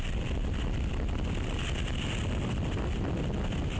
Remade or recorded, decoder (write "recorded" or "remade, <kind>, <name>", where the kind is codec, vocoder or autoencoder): recorded